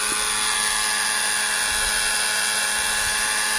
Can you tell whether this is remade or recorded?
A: recorded